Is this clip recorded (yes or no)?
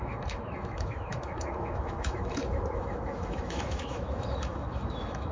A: no